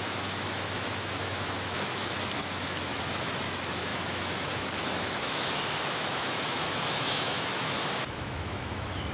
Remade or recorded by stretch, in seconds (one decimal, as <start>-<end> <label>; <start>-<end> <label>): 0.0-9.1 remade